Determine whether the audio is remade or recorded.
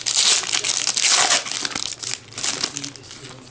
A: recorded